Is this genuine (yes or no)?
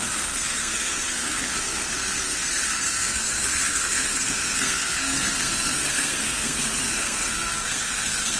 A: no